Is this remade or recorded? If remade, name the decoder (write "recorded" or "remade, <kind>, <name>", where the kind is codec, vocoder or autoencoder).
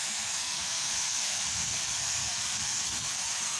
remade, codec, SNAC